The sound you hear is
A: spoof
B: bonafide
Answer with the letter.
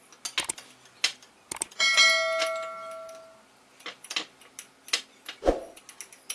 B